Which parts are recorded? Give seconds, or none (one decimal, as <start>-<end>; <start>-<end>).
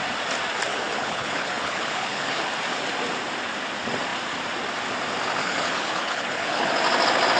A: 0.0-0.7; 2.4-5.4; 6.7-7.4